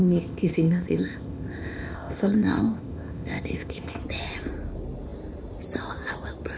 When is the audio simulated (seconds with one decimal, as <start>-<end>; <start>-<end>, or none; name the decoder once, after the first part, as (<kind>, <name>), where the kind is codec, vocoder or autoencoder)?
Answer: 0.0-4.0 (codec, ZipCodec)